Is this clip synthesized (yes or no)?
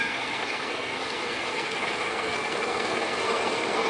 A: yes